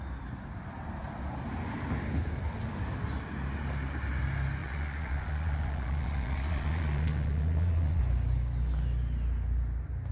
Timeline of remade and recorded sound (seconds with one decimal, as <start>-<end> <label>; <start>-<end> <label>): 0.0-4.6 recorded; 4.6-8.0 remade; 8.0-10.1 recorded